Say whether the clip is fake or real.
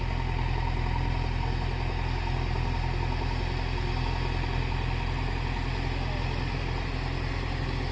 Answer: real